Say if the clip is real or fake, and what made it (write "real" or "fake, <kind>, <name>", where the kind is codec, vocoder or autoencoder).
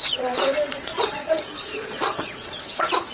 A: fake, vocoder, Vocos